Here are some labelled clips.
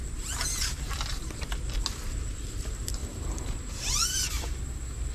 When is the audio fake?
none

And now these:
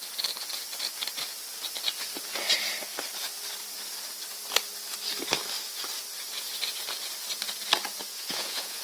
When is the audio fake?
8.1-8.8 (vocoder, Vocos)

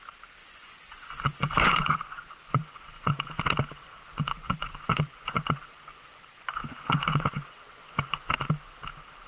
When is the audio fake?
0.4-3.4 (vocoder, Vocos); 3.8-8.2

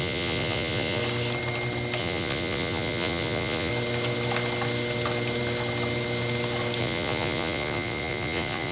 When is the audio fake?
0.0-1.0 (vocoder, Vocos); 2.0-3.7; 6.8-8.7

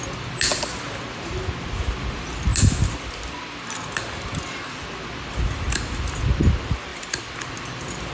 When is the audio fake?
none

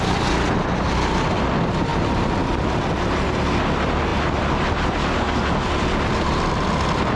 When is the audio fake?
none

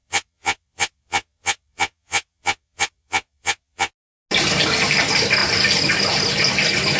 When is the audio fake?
0.0-3.9 (vocoder, Vocos)